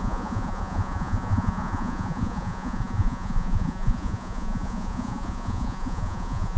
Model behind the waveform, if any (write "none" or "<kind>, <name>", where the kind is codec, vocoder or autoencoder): vocoder, Vocos